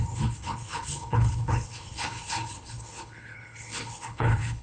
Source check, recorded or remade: remade